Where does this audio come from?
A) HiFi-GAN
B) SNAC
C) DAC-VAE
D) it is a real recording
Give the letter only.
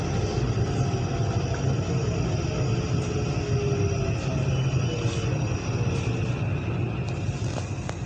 D